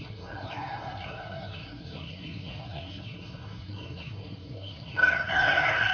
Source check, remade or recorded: remade